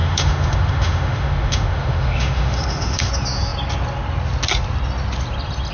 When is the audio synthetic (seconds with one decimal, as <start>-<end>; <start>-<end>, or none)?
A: 0.0-3.1